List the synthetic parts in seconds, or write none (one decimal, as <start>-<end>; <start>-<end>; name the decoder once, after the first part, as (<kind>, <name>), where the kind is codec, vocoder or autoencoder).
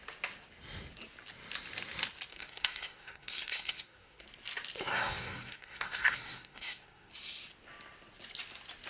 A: 2.3-4.2 (codec, SNAC); 4.9-7.1